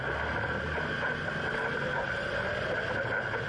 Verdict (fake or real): real